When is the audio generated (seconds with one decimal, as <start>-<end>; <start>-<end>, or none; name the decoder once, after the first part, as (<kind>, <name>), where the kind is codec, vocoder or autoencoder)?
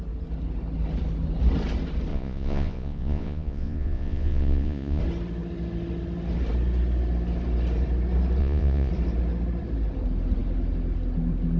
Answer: 2.1-5.0 (vocoder, Vocos); 8.4-8.9